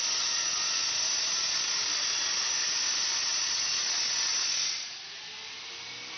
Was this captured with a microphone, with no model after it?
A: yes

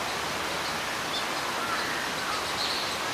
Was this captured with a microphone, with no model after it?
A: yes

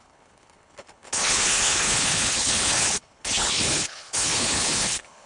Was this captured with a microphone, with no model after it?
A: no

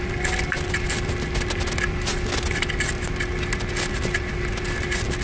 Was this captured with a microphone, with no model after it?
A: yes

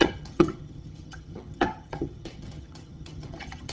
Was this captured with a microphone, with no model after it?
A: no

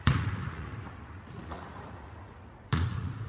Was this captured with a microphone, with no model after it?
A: no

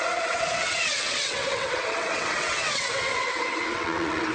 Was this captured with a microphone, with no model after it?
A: no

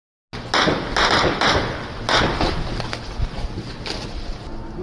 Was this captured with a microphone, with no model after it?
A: yes